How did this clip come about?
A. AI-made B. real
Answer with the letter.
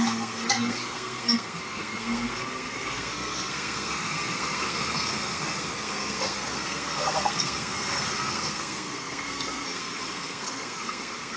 A